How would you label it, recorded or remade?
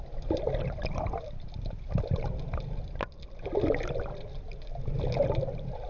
recorded